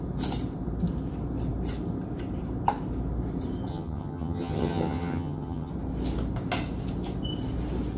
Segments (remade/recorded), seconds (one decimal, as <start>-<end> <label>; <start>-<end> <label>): 0.0-3.7 recorded; 3.7-5.7 remade; 5.7-8.0 recorded